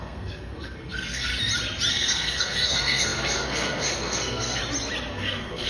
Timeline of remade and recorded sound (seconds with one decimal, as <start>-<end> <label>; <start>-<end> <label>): 0.0-1.3 remade; 1.3-1.9 recorded; 1.9-4.6 remade; 4.6-5.1 recorded; 5.1-5.7 remade